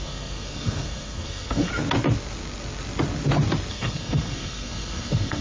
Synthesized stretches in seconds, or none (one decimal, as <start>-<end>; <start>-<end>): 0.0-1.7; 3.7-5.4